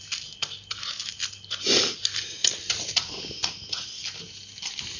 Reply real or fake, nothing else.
real